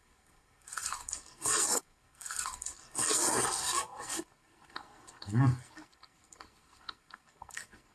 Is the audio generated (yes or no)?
yes